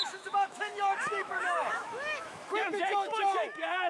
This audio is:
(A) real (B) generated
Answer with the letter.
B